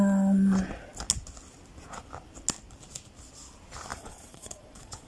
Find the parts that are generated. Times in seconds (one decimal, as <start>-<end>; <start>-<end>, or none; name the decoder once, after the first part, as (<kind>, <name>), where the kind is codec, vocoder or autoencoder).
3.9-5.1 (vocoder, Vocos)